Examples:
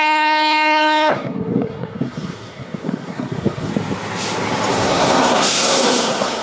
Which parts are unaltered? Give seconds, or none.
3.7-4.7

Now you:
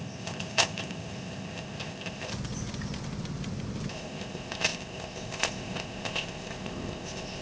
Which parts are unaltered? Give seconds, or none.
2.3-3.9